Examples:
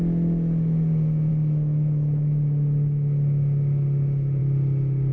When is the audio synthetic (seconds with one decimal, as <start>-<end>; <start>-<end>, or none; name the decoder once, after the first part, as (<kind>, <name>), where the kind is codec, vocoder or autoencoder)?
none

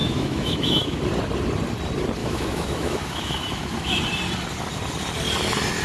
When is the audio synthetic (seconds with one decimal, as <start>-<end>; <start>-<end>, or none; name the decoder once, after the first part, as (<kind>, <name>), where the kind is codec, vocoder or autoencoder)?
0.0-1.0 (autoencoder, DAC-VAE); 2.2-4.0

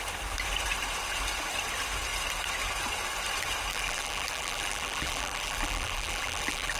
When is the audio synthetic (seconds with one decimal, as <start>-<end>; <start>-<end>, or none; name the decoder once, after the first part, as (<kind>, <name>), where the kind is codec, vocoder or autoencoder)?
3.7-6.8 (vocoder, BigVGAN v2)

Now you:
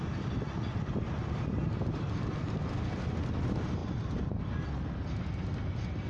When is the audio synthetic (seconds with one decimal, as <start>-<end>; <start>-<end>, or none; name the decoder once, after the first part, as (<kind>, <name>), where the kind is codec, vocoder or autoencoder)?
none

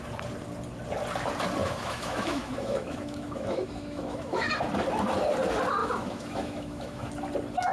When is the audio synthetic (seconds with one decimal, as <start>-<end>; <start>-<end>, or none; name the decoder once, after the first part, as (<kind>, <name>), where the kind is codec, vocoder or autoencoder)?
1.6-4.5 (autoencoder, DAC-VAE); 5.8-7.1

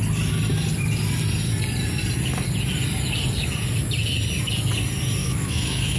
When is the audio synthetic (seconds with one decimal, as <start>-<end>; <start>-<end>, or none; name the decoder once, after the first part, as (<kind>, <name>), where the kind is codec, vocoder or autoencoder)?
5.2-6.0 (autoencoder, DAC-VAE)